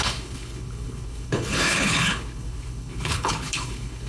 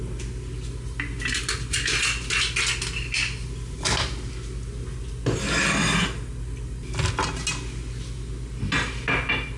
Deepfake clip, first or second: first